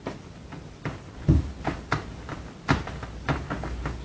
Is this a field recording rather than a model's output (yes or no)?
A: yes